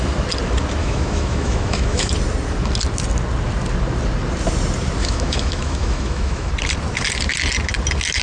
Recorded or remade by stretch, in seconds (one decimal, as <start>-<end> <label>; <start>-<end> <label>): 0.0-0.8 recorded; 0.8-2.1 remade; 2.1-5.0 recorded; 5.0-6.5 remade; 6.5-8.2 recorded